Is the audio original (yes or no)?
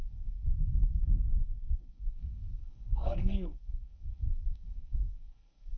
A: no